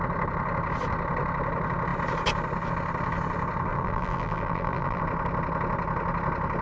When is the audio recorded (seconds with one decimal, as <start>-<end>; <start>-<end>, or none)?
0.0-3.7; 5.0-6.6